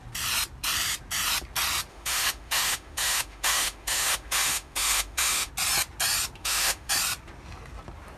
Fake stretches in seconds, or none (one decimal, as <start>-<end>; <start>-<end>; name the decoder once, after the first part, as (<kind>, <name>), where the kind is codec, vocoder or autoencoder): 1.9-5.5 (autoencoder, DAC-VAE); 6.4-6.9